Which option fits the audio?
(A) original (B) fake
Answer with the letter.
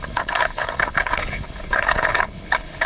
B